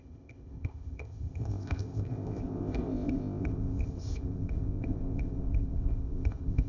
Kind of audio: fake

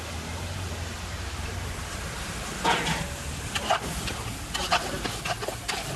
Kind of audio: real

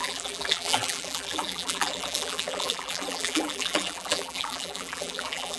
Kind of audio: fake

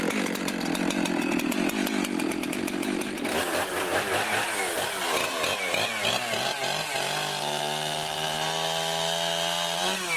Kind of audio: real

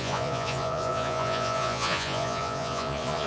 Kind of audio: fake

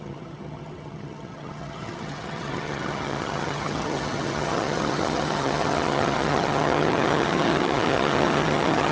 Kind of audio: fake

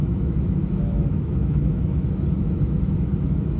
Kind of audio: fake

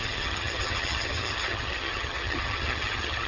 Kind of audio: fake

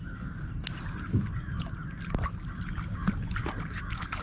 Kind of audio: real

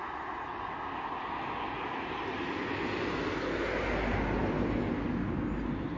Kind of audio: real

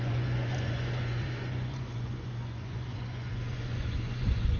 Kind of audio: fake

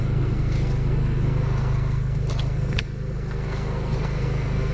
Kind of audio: fake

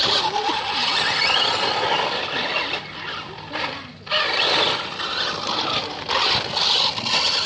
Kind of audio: real